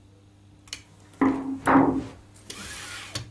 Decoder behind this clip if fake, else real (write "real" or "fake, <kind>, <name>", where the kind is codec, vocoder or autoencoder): real